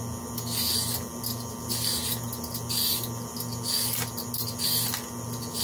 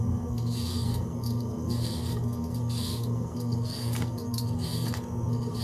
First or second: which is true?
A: first